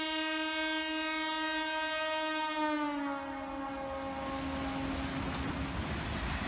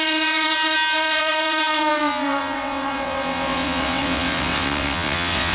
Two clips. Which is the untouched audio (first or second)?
first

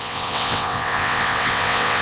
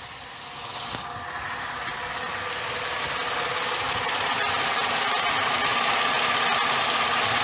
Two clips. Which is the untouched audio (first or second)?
second